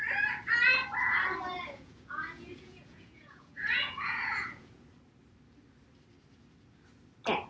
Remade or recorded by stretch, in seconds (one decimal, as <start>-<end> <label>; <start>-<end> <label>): 0.0-1.5 recorded; 1.5-4.7 remade; 4.7-7.5 recorded